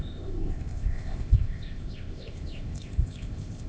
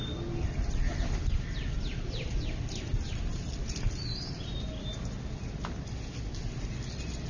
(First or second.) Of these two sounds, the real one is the second